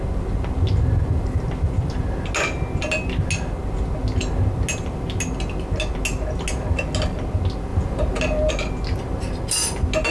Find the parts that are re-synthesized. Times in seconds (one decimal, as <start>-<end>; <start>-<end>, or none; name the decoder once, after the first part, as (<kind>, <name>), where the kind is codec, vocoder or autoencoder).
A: none